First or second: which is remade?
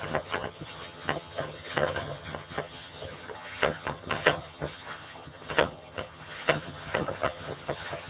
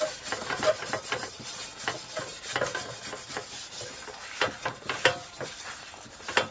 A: first